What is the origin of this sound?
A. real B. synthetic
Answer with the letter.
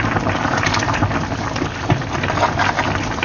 A